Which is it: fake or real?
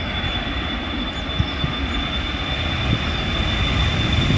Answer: real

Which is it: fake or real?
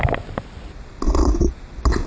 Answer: real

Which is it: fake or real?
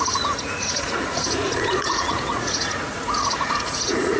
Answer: fake